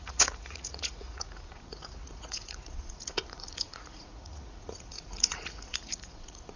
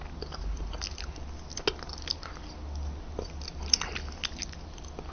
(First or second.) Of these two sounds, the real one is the second